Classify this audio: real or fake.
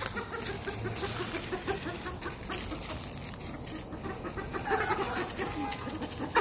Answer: real